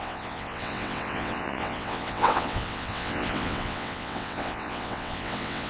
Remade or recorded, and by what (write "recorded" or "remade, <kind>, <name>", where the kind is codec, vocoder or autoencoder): remade, vocoder, WaveNeXt